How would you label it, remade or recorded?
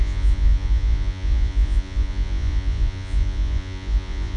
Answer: remade